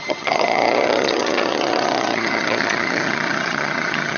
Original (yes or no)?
no